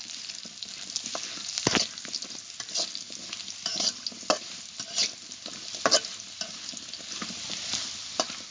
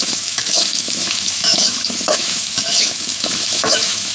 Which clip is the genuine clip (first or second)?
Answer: first